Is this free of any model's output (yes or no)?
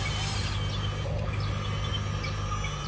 yes